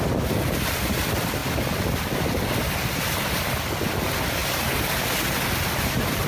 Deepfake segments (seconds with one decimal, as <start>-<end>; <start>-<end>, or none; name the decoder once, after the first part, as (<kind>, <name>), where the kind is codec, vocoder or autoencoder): none